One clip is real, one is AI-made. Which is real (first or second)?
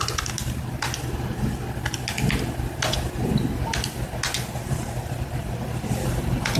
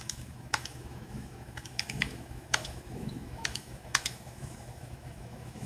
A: first